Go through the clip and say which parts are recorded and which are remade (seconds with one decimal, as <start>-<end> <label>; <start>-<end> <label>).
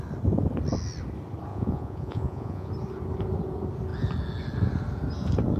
0.0-1.5 recorded; 1.5-2.7 remade; 2.7-5.6 recorded